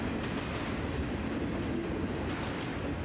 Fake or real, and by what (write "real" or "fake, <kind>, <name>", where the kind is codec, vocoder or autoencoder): real